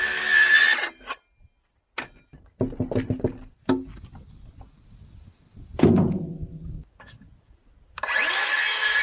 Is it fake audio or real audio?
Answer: real